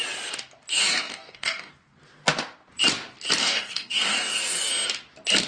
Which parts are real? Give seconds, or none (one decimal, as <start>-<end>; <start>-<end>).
0.0-0.7; 1.7-3.4; 4.7-5.5